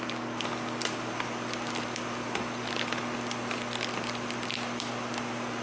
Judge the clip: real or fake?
real